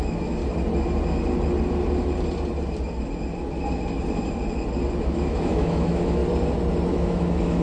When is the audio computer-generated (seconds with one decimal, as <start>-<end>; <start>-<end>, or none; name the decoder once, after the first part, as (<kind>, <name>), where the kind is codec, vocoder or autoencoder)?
0.0-0.4 (autoencoder, DAC-VAE); 5.0-6.2; 6.9-7.6